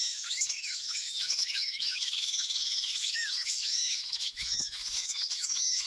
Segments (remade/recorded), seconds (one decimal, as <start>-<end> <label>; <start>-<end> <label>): 0.0-5.9 remade